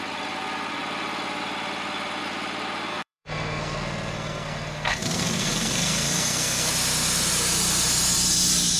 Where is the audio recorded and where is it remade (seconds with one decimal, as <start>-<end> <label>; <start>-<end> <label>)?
0.0-2.9 recorded; 2.9-6.7 remade; 6.7-8.8 recorded